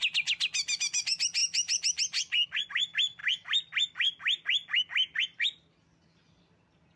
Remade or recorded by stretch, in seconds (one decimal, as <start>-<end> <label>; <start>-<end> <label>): 0.0-7.0 recorded